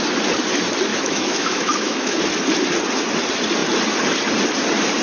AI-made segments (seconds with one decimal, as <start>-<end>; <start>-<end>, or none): 0.9-2.2